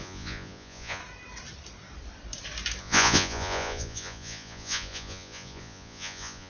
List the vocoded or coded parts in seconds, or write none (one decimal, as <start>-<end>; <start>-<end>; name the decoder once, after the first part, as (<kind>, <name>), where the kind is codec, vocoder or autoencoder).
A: 0.0-1.0 (vocoder, Vocos); 2.8-6.5